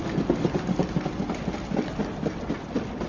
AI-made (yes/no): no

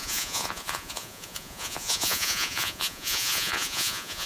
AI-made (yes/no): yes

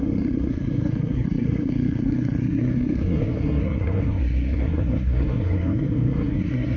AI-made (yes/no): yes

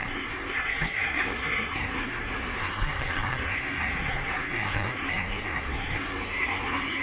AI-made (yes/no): yes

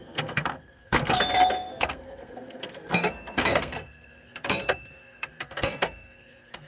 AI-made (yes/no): yes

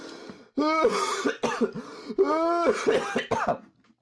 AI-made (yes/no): no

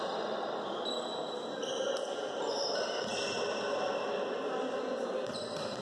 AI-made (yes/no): no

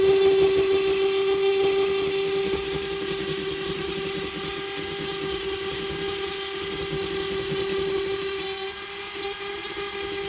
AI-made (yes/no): no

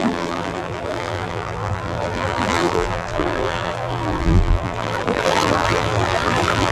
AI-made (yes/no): yes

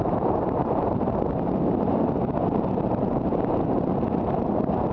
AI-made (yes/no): yes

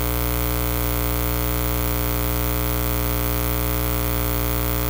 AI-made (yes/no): no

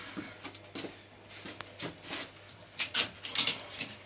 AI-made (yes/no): no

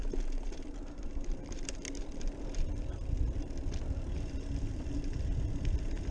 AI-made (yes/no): yes